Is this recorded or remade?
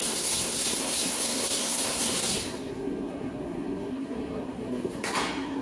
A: remade